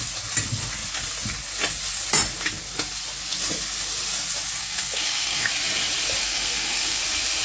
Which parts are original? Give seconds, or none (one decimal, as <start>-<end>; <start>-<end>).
0.0-4.6; 5.5-6.2; 7.0-7.4